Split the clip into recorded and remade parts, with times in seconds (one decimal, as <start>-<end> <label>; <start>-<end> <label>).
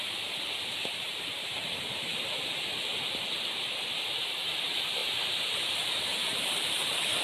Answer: 0.0-2.1 remade; 2.1-4.6 recorded; 4.6-5.0 remade; 5.0-5.5 recorded; 5.5-7.2 remade